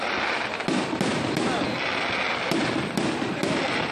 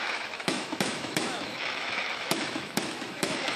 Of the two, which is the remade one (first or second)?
second